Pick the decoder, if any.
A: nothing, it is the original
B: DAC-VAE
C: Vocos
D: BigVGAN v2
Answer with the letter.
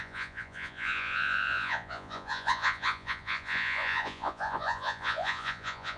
C